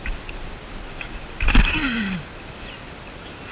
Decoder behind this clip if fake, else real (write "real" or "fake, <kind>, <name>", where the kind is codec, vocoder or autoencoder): real